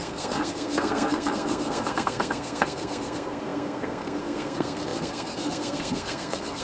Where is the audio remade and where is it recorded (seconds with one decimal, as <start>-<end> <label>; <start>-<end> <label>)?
0.0-6.6 remade